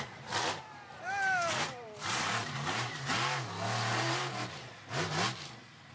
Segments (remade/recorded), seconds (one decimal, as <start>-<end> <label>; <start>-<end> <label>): 0.0-0.9 recorded; 0.9-3.1 remade; 3.1-3.9 recorded; 3.9-4.7 remade; 4.7-5.9 recorded